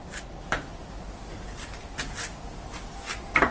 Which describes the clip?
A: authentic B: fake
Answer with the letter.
A